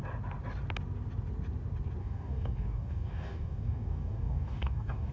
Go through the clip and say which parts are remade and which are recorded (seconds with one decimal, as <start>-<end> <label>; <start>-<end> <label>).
0.0-2.0 recorded; 2.0-5.1 remade